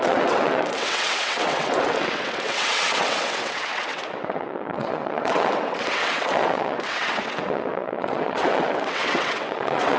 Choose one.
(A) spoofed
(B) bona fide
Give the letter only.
A